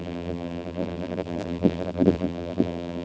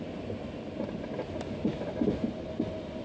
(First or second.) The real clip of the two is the second